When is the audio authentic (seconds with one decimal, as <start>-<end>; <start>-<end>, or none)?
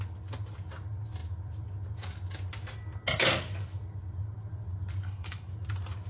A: 0.0-5.0; 5.5-6.1